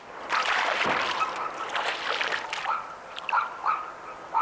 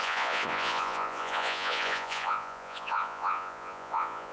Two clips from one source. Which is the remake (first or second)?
second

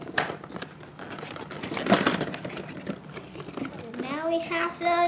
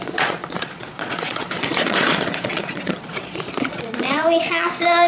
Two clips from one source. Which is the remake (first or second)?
second